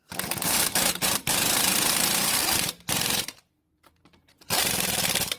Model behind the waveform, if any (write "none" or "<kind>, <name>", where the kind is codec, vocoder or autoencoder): vocoder, BigVGAN v2